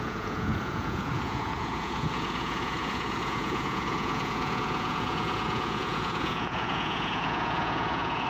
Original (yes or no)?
no